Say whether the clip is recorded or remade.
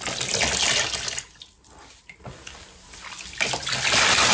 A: recorded